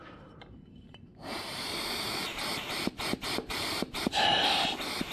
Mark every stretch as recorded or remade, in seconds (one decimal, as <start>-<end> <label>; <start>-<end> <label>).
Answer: 0.0-5.1 remade